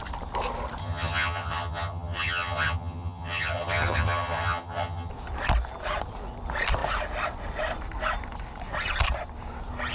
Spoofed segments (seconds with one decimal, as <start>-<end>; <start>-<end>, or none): 0.8-5.1